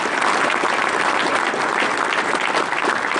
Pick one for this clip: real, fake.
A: real